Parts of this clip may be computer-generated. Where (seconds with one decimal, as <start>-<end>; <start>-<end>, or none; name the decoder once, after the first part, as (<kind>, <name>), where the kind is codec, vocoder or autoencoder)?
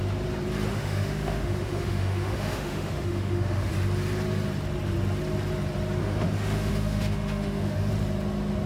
0.7-3.7 (autoencoder, DAC-VAE); 6.0-7.9